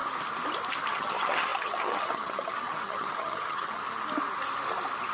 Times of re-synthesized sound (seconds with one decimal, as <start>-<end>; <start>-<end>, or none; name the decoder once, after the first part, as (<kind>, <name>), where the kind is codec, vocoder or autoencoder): 0.9-3.8 (vocoder, HiFi-GAN)